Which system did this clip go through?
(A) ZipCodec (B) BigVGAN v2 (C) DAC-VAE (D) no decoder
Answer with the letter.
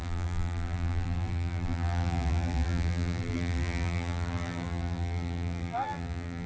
B